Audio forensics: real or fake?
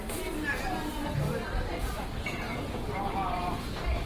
real